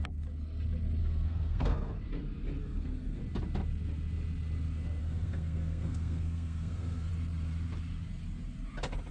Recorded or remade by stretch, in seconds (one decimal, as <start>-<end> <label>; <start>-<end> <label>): 0.0-1.0 recorded; 1.0-2.0 remade; 2.0-2.6 recorded; 2.6-3.2 remade; 3.2-5.0 recorded; 5.0-7.1 remade; 7.1-9.1 recorded